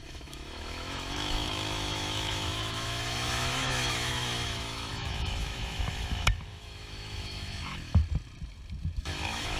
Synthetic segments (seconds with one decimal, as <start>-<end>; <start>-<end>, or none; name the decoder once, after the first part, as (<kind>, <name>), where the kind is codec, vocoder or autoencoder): 0.0-8.0 (autoencoder, DAC-VAE); 9.0-9.6